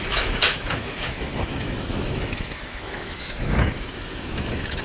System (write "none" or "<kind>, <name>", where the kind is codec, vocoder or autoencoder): autoencoder, DAC-VAE